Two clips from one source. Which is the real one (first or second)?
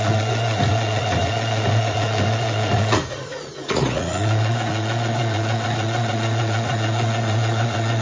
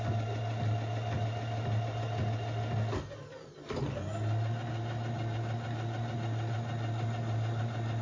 second